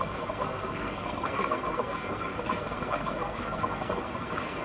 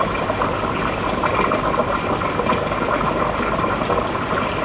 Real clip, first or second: second